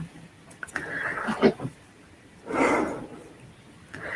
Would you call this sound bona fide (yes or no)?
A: yes